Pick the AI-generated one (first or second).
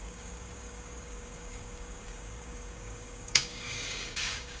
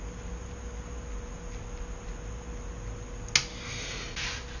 first